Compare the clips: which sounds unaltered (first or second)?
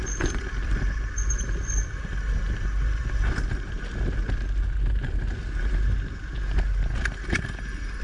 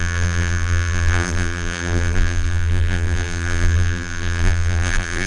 first